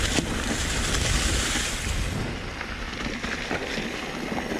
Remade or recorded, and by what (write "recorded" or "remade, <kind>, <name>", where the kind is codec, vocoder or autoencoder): recorded